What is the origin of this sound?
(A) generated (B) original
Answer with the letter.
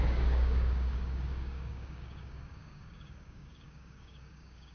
A